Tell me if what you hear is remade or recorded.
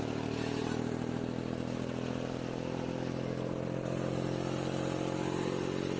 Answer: recorded